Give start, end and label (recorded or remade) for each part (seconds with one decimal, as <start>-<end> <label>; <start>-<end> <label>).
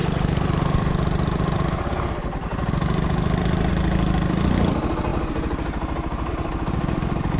0.0-7.4 recorded